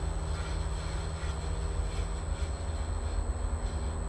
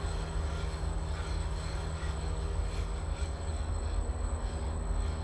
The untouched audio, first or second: first